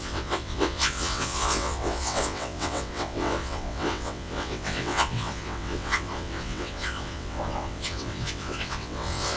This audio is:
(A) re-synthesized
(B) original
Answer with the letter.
A